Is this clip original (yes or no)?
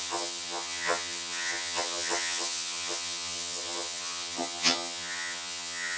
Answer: no